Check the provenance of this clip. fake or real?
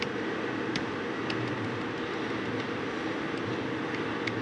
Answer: real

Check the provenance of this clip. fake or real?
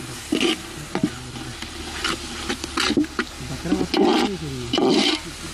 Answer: real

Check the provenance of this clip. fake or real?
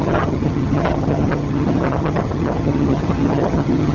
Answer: fake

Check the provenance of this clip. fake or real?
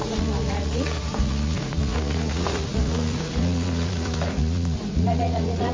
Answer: fake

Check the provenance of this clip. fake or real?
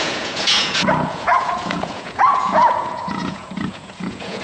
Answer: fake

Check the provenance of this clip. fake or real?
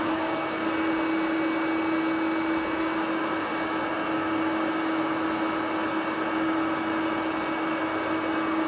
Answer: real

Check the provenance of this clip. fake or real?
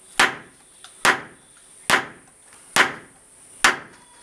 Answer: real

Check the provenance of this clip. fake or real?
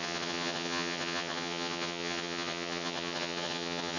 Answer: fake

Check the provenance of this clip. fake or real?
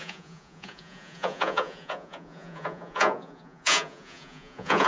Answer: fake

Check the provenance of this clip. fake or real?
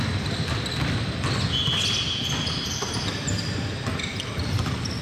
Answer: real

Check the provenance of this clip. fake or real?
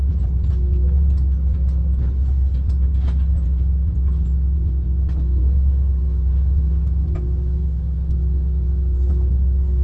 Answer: real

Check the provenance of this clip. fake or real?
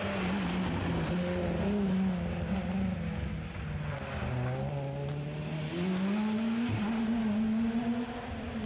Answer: real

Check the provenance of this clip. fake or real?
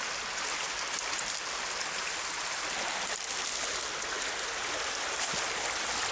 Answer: real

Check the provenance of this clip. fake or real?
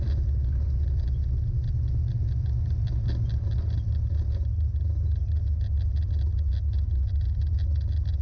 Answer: real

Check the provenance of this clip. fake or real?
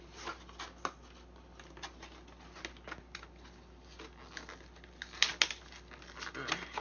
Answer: real